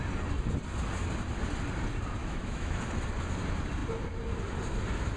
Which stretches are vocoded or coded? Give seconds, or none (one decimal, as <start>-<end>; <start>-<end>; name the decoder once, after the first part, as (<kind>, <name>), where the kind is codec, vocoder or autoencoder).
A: 2.2-2.8 (autoencoder, DAC-VAE)